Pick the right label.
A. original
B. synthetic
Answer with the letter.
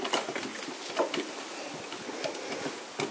A